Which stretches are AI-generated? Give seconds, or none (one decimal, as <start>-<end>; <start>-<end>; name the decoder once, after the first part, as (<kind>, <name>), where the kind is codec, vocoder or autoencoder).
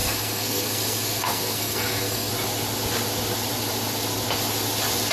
0.0-2.3 (codec, SNAC)